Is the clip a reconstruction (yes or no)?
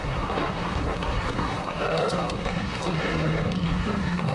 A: yes